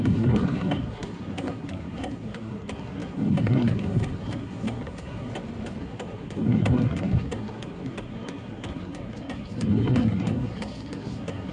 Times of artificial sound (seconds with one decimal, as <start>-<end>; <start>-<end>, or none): 0.0-5.3; 5.8-11.5